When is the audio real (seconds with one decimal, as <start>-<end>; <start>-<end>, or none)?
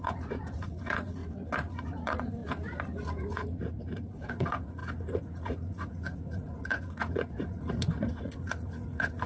1.2-1.7; 2.4-3.3